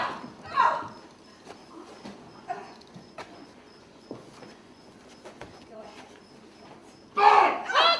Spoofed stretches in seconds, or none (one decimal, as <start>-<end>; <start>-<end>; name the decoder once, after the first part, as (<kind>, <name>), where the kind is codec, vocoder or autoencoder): 1.6-6.2 (vocoder, Vocos)